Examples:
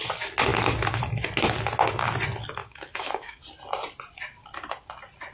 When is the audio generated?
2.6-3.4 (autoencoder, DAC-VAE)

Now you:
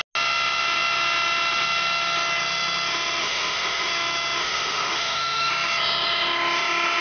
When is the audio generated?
3.2-3.9 (autoencoder, DAC-VAE); 4.4-5.5

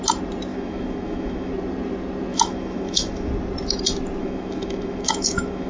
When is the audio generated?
0.5-1.5 (autoencoder, DAC-VAE); 2.3-3.3; 4.2-5.7

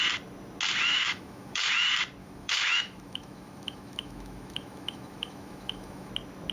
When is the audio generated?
0.9-1.7 (autoencoder, DAC-VAE); 2.2-6.1

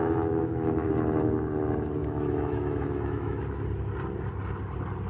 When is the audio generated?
0.0-0.9 (autoencoder, DAC-VAE); 2.0-3.4